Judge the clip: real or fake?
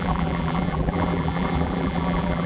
fake